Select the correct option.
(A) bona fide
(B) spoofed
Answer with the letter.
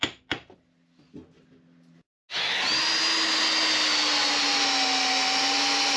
A